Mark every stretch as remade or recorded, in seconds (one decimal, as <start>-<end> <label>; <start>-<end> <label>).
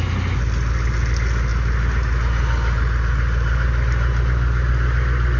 0.0-5.4 recorded